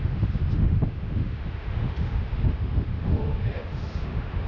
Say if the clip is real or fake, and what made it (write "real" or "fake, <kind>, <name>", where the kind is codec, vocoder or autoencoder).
fake, autoencoder, DAC-VAE